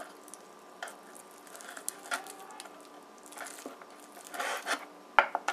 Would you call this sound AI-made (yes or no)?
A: no